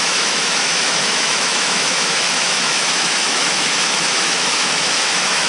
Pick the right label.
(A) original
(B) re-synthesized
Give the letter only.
B